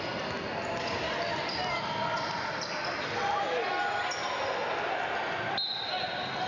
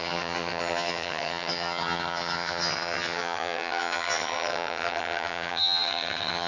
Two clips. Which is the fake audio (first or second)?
second